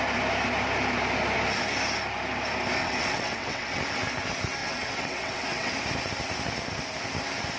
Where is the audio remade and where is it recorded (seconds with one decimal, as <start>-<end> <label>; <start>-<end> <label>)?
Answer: 0.0-2.8 recorded; 2.8-3.8 remade; 3.8-4.6 recorded; 4.6-5.7 remade; 5.7-7.6 recorded